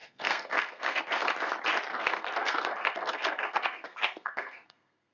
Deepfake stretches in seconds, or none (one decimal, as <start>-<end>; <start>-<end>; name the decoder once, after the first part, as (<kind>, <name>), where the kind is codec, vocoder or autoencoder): 0.0-1.0 (codec, SNAC); 1.9-5.1